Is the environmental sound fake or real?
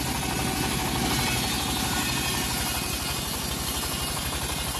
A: real